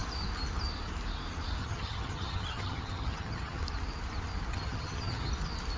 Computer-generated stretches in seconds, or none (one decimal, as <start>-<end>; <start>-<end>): 1.6-3.6; 4.5-5.3